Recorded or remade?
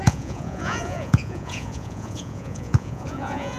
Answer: remade